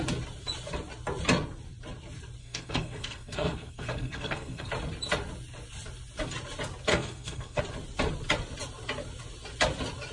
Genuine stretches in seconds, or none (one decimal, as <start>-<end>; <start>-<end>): 0.0-2.4; 4.7-6.9; 7.6-10.1